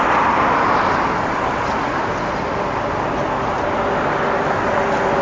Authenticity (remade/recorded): recorded